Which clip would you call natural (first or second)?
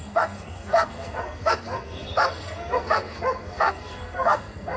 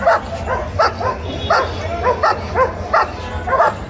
second